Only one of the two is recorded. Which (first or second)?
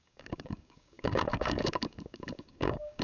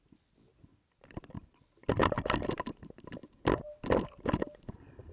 second